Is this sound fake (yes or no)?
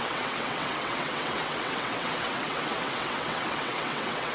yes